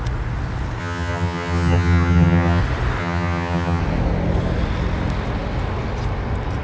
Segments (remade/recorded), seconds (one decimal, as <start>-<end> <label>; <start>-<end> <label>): 0.0-0.8 recorded; 0.8-2.6 remade; 2.6-3.0 recorded; 3.0-3.8 remade; 3.8-6.6 recorded